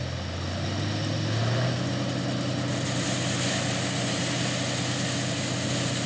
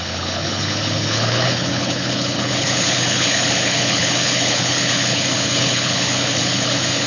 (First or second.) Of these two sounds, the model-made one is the second